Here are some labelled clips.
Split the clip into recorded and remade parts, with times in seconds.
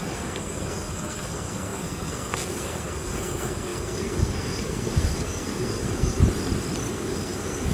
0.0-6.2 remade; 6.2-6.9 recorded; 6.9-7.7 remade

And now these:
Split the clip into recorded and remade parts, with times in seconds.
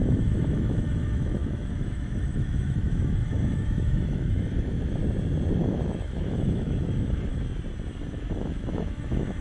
0.0-5.0 remade; 5.0-5.6 recorded; 5.6-7.3 remade; 7.3-8.1 recorded; 8.1-9.4 remade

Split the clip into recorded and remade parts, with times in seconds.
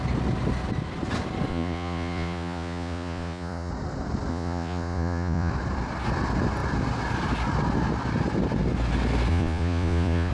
0.0-1.5 recorded; 1.5-3.7 remade; 3.7-4.3 recorded; 4.3-5.5 remade; 5.5-9.3 recorded; 9.3-10.3 remade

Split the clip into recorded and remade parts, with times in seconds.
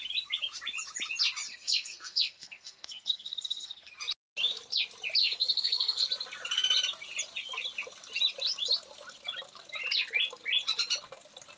0.0-1.5 recorded; 1.5-3.9 remade; 3.9-5.2 recorded; 5.2-6.0 remade; 6.0-11.6 recorded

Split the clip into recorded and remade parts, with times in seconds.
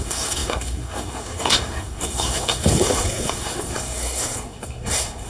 0.0-5.3 remade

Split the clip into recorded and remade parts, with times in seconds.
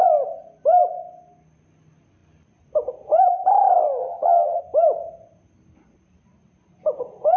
0.0-4.0 recorded; 4.0-4.6 remade; 4.6-7.4 recorded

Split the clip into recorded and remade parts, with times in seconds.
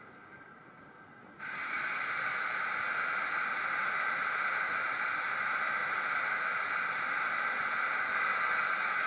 0.0-9.1 recorded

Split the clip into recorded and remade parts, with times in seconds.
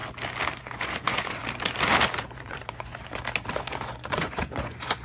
0.0-0.6 recorded; 0.6-1.4 remade; 1.4-2.1 recorded; 2.1-2.9 remade; 2.9-3.6 recorded; 3.6-5.0 remade